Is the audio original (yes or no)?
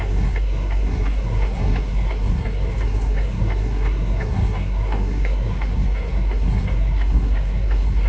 no